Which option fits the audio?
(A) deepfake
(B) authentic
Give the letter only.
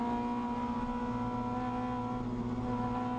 B